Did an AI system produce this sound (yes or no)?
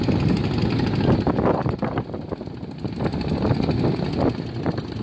no